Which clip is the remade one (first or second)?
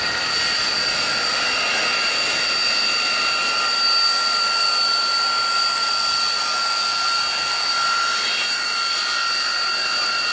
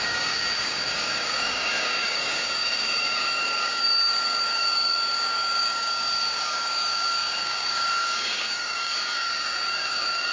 second